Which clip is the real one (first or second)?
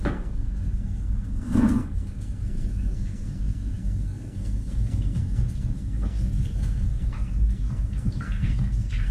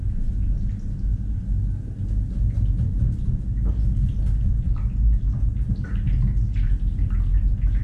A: second